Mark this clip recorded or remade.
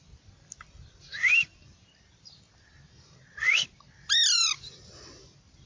recorded